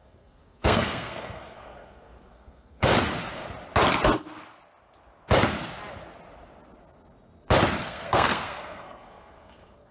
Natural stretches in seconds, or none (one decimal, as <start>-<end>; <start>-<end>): 2.9-7.8